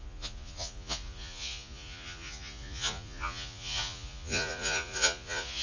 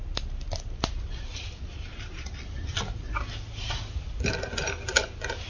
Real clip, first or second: second